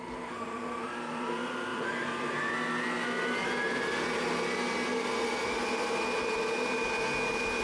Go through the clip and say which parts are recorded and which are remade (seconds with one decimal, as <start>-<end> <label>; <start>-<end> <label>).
0.0-1.7 recorded; 1.7-2.5 remade; 2.5-3.6 recorded; 3.6-4.2 remade; 4.2-7.6 recorded